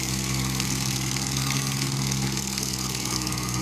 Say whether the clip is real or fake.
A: fake